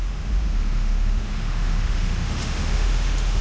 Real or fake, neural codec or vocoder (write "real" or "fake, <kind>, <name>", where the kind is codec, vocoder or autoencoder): fake, autoencoder, DAC-VAE